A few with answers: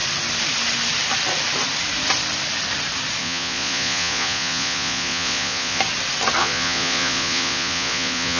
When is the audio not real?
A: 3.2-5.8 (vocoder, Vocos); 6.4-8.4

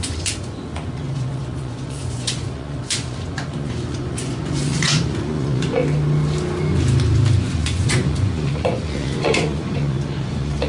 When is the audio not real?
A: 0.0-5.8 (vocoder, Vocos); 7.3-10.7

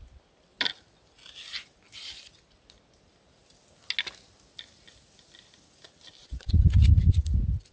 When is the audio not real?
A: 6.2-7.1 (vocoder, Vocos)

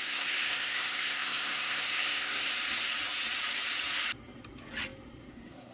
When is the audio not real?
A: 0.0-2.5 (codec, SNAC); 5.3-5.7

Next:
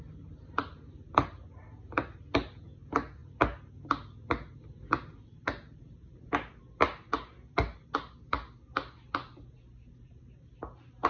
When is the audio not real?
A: none

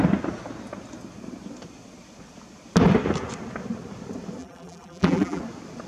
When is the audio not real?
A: 4.4-5.4 (vocoder, BigVGAN v2)

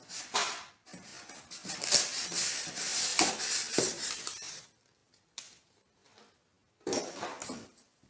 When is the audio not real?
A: 0.0-1.1 (vocoder, BigVGAN v2); 2.2-5.0; 7.0-8.1

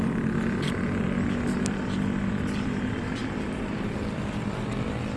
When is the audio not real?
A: 0.0-1.0 (vocoder, BigVGAN v2); 1.5-5.2